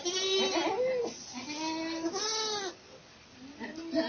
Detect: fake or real real